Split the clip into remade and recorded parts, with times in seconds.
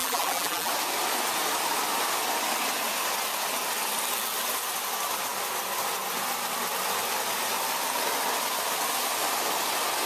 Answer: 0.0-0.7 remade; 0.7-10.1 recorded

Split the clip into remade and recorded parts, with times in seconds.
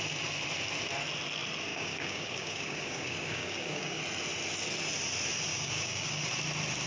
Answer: 0.0-1.7 recorded; 1.7-4.0 remade; 4.0-5.5 recorded; 5.5-6.2 remade; 6.2-6.9 recorded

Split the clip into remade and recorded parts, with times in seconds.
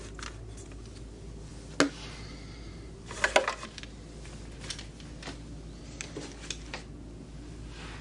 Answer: 0.0-8.0 recorded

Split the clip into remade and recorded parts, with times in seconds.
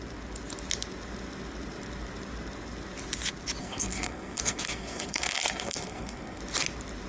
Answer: 0.0-3.6 recorded; 3.6-6.4 remade; 6.4-7.1 recorded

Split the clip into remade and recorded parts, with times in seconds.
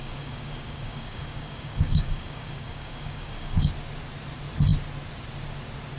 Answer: 0.0-3.6 remade; 3.6-6.0 recorded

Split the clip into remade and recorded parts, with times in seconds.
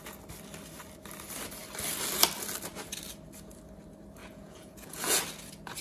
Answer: 0.0-4.2 recorded; 4.2-5.2 remade; 5.2-5.8 recorded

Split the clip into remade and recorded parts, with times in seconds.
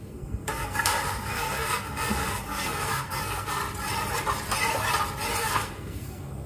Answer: 0.0-3.6 remade; 3.6-5.4 recorded; 5.4-6.5 remade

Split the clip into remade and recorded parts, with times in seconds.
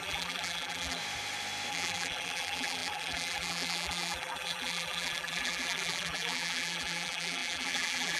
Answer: 0.0-1.0 remade; 1.0-1.7 recorded; 1.7-8.2 remade